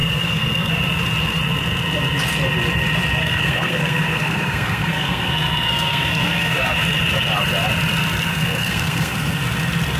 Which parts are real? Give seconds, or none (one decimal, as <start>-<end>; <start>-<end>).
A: 0.7-3.2; 6.8-8.3; 9.4-10.0